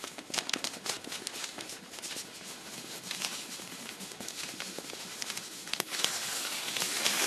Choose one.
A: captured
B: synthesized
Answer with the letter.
B